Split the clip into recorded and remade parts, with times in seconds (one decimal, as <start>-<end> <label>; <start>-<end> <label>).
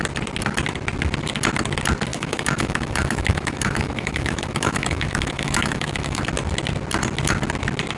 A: 0.0-2.1 recorded; 2.1-6.2 remade; 6.2-8.0 recorded